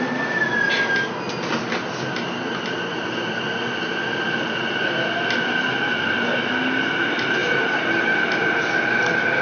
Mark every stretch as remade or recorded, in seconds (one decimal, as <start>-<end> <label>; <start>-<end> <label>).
0.0-9.4 recorded